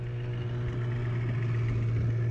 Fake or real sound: real